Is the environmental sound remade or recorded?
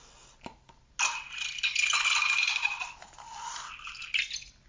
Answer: recorded